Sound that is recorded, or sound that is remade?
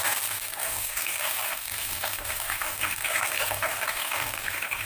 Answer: remade